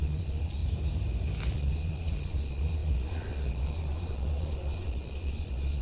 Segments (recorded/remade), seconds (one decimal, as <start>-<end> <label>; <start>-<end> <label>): 0.0-0.6 remade; 0.6-1.5 recorded; 1.5-5.8 remade